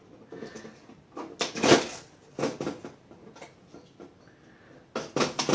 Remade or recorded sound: recorded